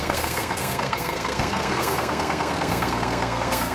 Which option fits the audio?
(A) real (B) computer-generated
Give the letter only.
B